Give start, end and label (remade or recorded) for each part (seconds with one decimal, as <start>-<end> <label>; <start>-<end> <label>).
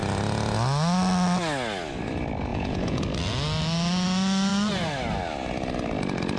0.0-2.5 recorded; 2.5-3.0 remade; 3.0-6.4 recorded